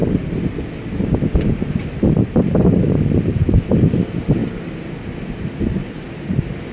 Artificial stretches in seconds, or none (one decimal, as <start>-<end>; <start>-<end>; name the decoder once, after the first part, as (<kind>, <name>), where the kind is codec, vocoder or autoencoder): none